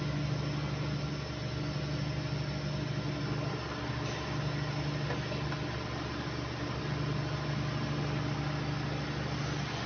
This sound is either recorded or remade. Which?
recorded